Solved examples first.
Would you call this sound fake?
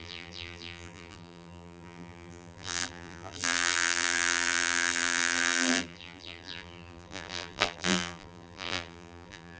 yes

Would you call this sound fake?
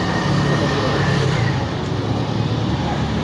no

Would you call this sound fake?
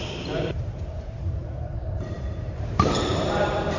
yes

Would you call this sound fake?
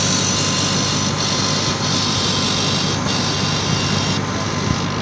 no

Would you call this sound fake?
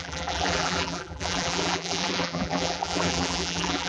yes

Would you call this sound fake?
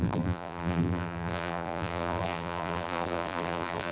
yes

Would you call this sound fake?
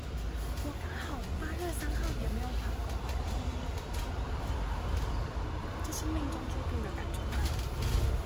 no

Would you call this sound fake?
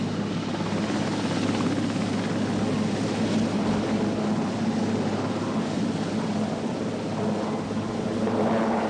no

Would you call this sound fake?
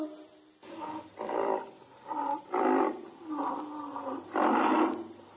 yes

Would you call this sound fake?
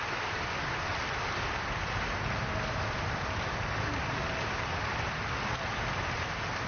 no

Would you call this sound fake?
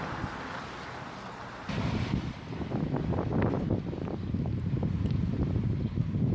yes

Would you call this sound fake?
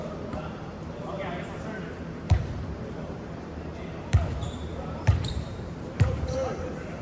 yes